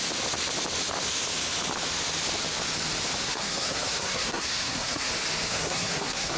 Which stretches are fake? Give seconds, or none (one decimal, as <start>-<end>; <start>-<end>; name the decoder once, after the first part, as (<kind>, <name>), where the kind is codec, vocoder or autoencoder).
3.2-5.1 (codec, SNAC); 5.5-6.4